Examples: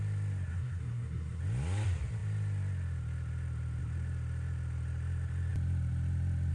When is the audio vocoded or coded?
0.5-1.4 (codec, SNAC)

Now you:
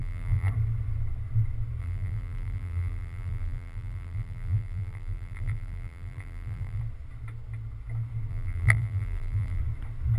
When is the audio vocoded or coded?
0.0-0.5 (vocoder, BigVGAN v2); 1.8-6.8; 8.3-9.6

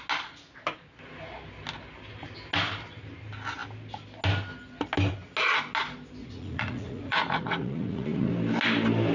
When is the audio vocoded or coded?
6.2-8.3 (vocoder, Vocos)

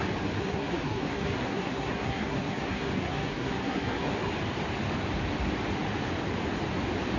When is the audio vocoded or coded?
0.4-4.3 (codec, SNAC)

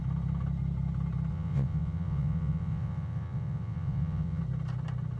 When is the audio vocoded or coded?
1.3-4.4 (vocoder, WaveNeXt)

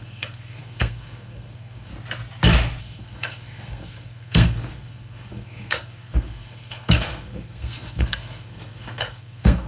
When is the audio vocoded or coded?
0.0-1.9 (codec, SNAC); 2.8-9.7